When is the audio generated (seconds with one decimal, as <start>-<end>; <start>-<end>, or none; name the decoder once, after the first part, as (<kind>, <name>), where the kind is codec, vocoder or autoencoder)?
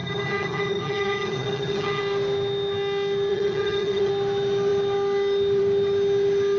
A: 0.0-2.0 (vocoder, HiFi-GAN); 3.3-4.1